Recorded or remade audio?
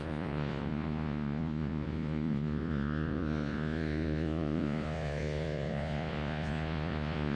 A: remade